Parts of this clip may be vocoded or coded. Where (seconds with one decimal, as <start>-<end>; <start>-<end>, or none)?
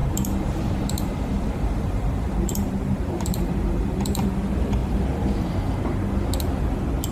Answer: 0.0-4.3; 4.8-5.5